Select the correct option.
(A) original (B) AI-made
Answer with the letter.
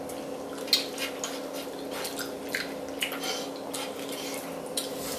A